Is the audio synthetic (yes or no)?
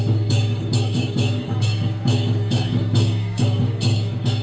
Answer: yes